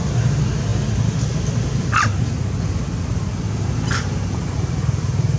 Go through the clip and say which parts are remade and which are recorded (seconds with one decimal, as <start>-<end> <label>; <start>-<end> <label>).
0.0-5.4 recorded